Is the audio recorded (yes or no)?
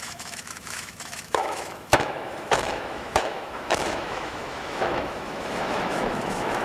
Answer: no